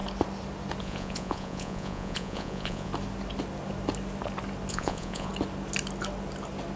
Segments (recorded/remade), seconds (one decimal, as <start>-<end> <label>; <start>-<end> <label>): 0.0-0.8 recorded; 0.8-2.9 remade; 2.9-4.7 recorded; 4.7-5.3 remade; 5.3-6.8 recorded